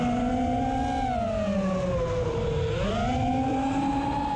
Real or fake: real